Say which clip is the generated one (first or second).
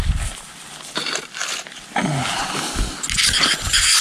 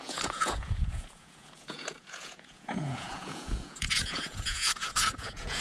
second